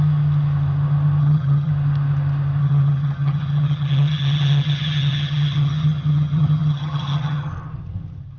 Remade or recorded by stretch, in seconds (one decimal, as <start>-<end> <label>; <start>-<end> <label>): 0.0-1.2 recorded; 1.2-1.7 remade; 1.7-2.6 recorded; 2.6-7.5 remade; 7.5-8.4 recorded

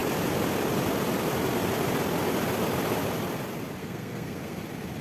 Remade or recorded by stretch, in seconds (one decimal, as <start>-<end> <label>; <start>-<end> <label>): 0.0-3.8 recorded; 3.8-4.6 remade; 4.6-5.0 recorded

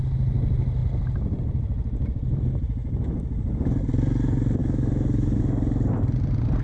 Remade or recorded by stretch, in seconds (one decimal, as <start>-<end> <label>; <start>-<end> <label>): 0.0-4.6 recorded; 4.6-5.4 remade; 5.4-6.6 recorded

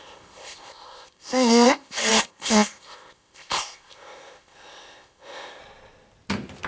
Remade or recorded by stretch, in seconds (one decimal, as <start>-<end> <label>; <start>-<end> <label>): 0.0-5.6 remade; 5.6-6.7 recorded

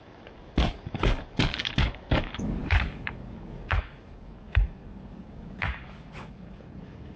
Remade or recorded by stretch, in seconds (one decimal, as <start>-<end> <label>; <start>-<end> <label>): 0.0-7.2 remade